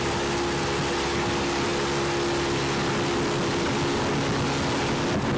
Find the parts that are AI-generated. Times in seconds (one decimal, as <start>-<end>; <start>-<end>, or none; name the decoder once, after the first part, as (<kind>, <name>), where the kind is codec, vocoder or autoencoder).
none